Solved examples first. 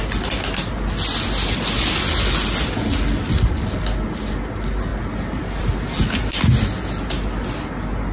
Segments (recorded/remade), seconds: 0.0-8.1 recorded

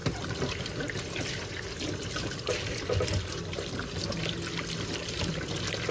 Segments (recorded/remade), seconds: 0.0-5.9 recorded